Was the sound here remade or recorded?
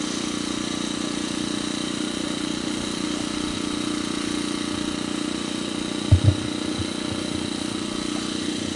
recorded